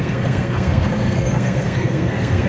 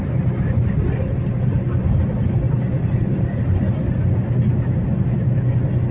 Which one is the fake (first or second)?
first